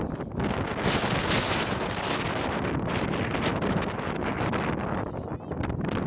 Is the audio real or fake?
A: real